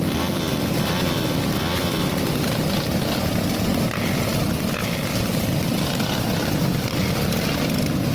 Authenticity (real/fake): real